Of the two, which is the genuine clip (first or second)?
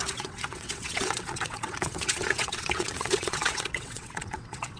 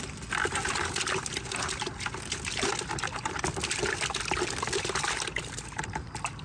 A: second